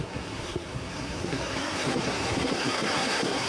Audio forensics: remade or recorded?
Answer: remade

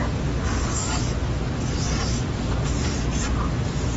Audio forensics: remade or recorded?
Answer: recorded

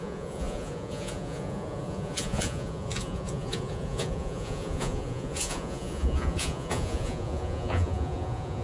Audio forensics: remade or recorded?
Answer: remade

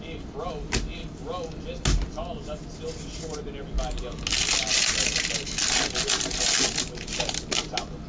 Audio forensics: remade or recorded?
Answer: recorded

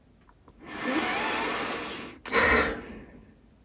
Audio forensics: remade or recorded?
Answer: recorded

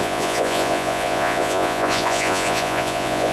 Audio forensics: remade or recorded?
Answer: remade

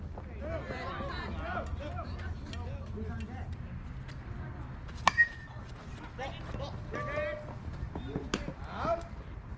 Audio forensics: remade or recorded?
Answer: recorded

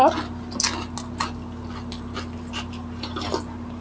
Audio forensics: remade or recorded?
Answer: recorded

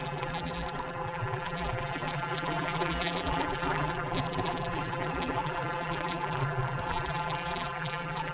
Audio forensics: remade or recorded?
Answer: remade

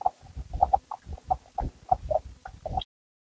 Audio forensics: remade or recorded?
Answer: recorded